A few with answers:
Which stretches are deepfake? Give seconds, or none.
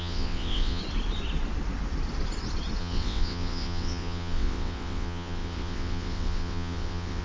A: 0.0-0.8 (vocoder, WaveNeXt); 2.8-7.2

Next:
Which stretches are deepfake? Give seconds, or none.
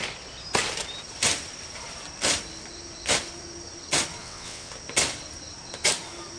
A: 4.2-4.7 (vocoder, WaveNeXt)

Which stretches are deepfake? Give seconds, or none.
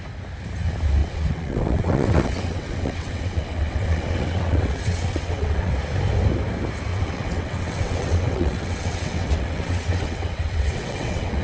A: 1.0-5.7 (vocoder, WaveNeXt); 6.9-11.4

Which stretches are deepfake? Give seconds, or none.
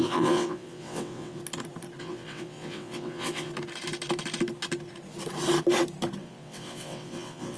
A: 0.0-1.4 (vocoder, WaveNeXt); 2.0-3.5; 6.2-7.6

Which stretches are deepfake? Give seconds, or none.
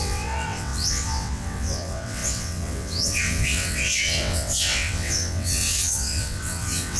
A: 0.0-7.0 (vocoder, WaveNeXt)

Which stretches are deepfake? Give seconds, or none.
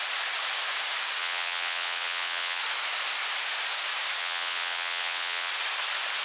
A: 1.2-2.6 (vocoder, WaveNeXt); 4.2-5.5